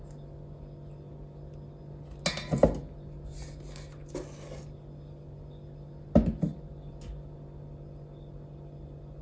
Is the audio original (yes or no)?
yes